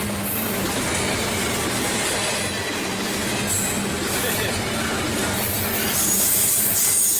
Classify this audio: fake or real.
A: real